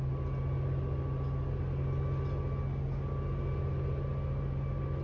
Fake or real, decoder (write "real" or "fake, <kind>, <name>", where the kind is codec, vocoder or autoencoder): real